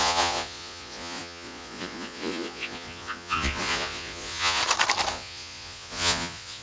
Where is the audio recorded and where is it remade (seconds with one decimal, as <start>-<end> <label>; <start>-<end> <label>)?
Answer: 0.0-4.6 remade; 4.6-5.1 recorded; 5.1-6.6 remade

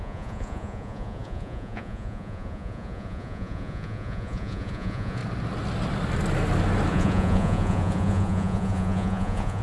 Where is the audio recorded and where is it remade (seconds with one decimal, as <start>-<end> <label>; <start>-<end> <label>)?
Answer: 0.0-5.2 remade; 5.2-6.9 recorded; 6.9-9.6 remade

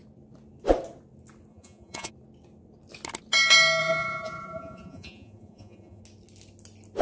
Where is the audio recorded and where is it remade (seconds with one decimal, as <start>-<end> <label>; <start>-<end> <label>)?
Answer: 0.0-1.5 recorded; 1.5-2.1 remade; 2.1-3.8 recorded; 3.8-6.0 remade; 6.0-7.0 recorded

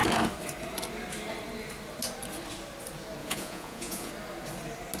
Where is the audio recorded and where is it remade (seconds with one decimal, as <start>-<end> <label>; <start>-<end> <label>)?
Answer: 0.0-3.2 recorded; 3.2-4.1 remade; 4.1-5.0 recorded

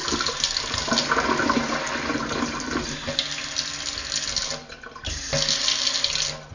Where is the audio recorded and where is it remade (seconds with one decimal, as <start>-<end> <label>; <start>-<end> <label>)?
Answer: 0.0-6.5 recorded

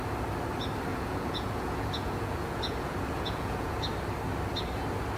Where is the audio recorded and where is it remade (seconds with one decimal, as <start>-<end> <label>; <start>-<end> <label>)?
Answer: 0.0-0.9 recorded; 0.9-3.9 remade; 3.9-5.2 recorded

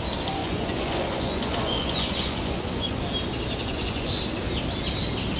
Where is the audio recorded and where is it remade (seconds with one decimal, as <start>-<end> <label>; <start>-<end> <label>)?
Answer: 0.0-0.4 recorded; 0.4-3.0 remade; 3.0-3.6 recorded; 3.6-4.2 remade; 4.2-5.4 recorded